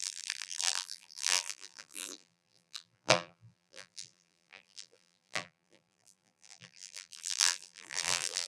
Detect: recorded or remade remade